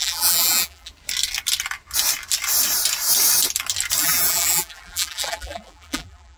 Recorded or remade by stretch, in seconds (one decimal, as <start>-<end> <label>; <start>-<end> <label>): 0.0-0.9 remade; 0.9-4.0 recorded; 4.0-6.4 remade